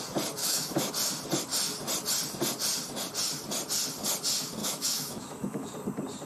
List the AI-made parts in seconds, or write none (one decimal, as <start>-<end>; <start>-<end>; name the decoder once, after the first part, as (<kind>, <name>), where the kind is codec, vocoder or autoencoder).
0.4-0.9 (autoencoder, DAC-VAE); 4.6-5.7